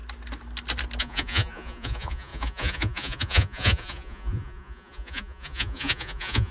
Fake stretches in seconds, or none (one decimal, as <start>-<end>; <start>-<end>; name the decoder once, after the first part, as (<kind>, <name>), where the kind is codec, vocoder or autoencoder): 1.0-6.5 (vocoder, Vocos)